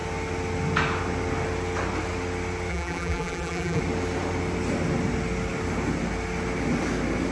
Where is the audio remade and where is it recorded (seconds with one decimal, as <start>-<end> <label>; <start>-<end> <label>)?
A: 0.0-2.7 recorded; 2.7-3.8 remade; 3.8-7.3 recorded